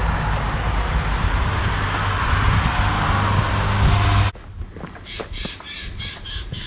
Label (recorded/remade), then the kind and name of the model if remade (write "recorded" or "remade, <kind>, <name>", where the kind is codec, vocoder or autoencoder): recorded